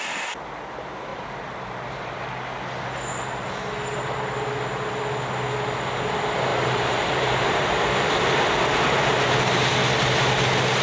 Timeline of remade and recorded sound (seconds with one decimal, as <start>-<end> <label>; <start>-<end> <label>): 0.0-1.1 recorded; 1.1-2.2 remade; 2.2-6.5 recorded; 6.5-9.3 remade; 9.3-10.8 recorded

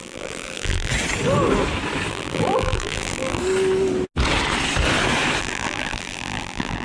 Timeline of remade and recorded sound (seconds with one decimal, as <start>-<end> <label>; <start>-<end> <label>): 0.0-0.9 remade; 0.9-2.1 recorded; 2.1-3.4 remade; 3.4-5.4 recorded; 5.4-6.8 remade

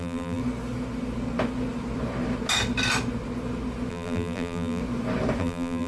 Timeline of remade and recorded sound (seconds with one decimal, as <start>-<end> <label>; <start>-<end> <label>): 0.0-0.4 remade; 0.4-3.9 recorded; 3.9-4.8 remade; 4.8-5.4 recorded; 5.4-5.9 remade

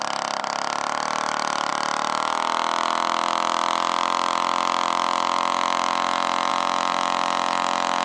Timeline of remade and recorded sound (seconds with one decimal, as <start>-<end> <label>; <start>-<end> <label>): 0.0-8.0 recorded

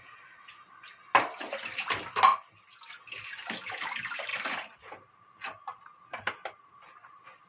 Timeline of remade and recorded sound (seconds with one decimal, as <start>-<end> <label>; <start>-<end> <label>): 0.0-7.5 recorded

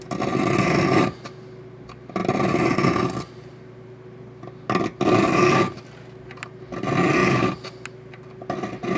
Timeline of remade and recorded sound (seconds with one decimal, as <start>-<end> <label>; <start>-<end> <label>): 0.0-9.0 recorded

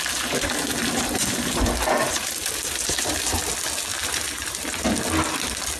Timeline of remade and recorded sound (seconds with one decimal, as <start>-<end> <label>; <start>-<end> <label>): 0.0-0.8 recorded; 0.8-3.5 remade; 3.5-3.9 recorded; 3.9-4.9 remade; 4.9-5.8 recorded

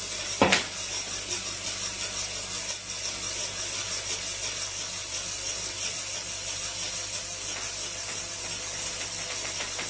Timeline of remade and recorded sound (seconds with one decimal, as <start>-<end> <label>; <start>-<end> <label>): 0.0-5.0 recorded; 5.0-6.0 remade; 6.0-9.9 recorded